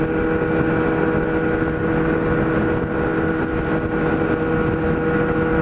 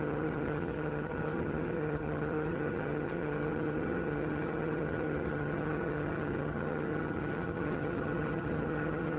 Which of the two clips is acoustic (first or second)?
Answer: first